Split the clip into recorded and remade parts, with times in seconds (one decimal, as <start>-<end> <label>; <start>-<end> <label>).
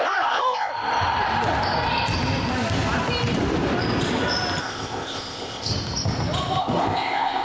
0.0-0.7 remade; 0.7-4.6 recorded; 4.6-5.7 remade; 5.7-6.6 recorded; 6.6-7.4 remade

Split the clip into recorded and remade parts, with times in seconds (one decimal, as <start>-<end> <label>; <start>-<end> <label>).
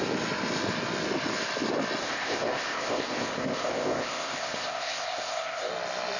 0.0-2.0 recorded; 2.0-5.7 remade; 5.7-6.2 recorded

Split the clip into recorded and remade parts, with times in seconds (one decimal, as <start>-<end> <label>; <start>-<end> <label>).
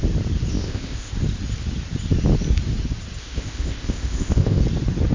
0.0-0.5 recorded; 0.5-1.1 remade; 1.1-3.2 recorded; 3.2-4.6 remade; 4.6-5.1 recorded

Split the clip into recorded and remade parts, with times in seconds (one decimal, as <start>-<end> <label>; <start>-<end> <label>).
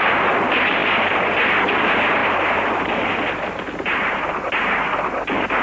0.0-5.6 recorded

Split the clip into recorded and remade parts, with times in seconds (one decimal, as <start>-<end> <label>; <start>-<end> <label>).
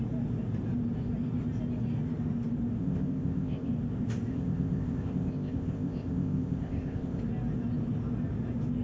0.0-2.8 recorded; 2.8-3.7 remade; 3.7-4.3 recorded; 4.3-7.2 remade; 7.2-8.8 recorded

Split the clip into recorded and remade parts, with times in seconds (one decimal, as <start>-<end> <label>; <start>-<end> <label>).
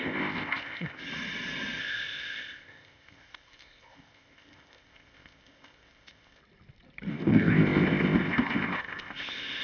0.0-1.0 remade; 1.0-1.8 recorded; 1.8-6.4 remade; 6.4-7.1 recorded; 7.1-9.6 remade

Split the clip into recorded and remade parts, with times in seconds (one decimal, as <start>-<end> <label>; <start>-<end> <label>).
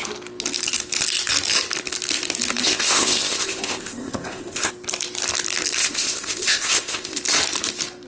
0.0-2.6 recorded; 2.6-4.7 remade; 4.7-5.8 recorded; 5.8-7.2 remade; 7.2-8.1 recorded